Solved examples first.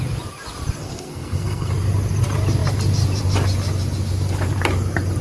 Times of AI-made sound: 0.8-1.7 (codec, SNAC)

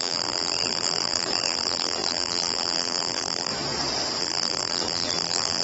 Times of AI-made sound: 0.0-3.5 (vocoder, BigVGAN v2); 4.2-5.6

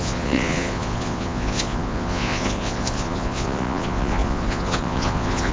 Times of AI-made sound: 0.0-5.5 (vocoder, Vocos)

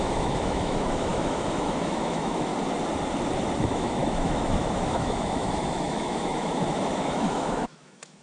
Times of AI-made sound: 0.0-2.5 (autoencoder, DAC-VAE); 3.6-8.2

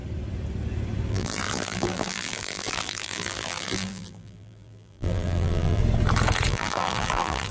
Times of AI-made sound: 1.1-5.8 (vocoder, BigVGAN v2); 6.5-7.5

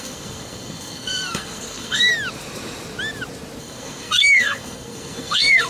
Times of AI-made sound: 0.0-2.1 (codec, SNAC); 3.6-5.7

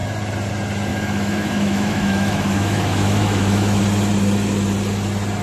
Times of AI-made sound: 0.9-3.8 (autoencoder, DAC-VAE)